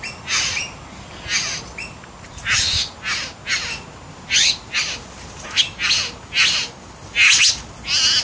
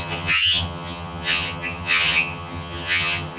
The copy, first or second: second